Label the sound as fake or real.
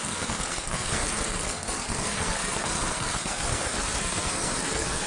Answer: fake